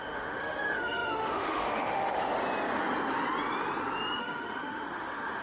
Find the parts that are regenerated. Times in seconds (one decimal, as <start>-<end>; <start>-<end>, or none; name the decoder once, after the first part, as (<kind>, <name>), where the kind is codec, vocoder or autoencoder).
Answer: 0.0-2.2 (autoencoder, DAC-VAE); 4.2-5.4